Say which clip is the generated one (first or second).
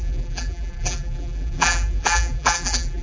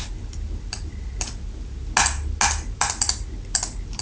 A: first